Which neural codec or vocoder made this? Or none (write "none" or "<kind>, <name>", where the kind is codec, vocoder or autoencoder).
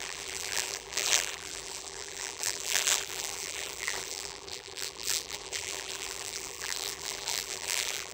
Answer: vocoder, BigVGAN v2